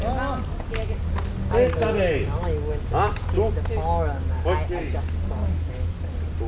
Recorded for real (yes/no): yes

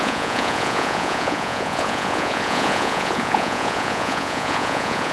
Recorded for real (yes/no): no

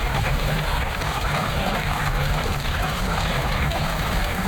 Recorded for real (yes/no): no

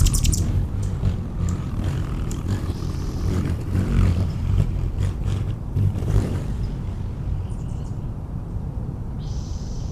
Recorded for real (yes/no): no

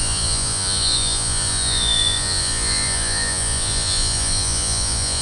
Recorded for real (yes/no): no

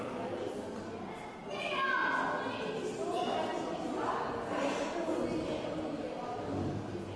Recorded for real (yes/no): yes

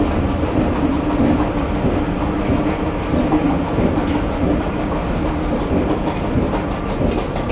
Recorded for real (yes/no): yes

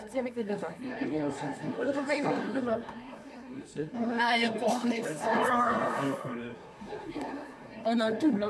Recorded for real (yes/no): no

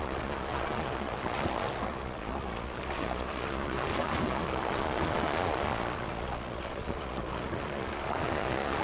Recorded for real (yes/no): no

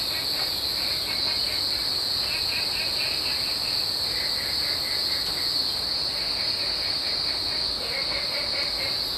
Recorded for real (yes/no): yes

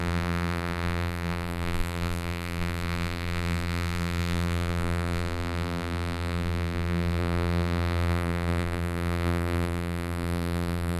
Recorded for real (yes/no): no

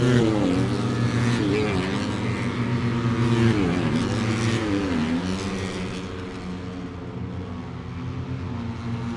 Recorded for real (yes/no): yes